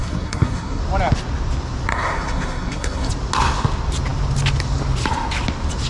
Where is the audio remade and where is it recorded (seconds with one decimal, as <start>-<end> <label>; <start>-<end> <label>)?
0.0-0.8 remade; 0.8-1.9 recorded; 1.9-3.1 remade; 3.1-5.9 recorded